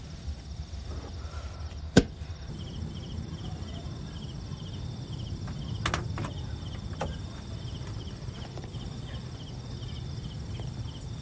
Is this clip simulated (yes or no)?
no